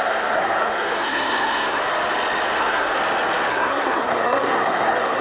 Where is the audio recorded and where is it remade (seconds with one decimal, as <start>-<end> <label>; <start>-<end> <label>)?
0.0-1.8 remade; 1.8-2.6 recorded; 2.6-3.0 remade; 3.0-3.5 recorded; 3.5-5.2 remade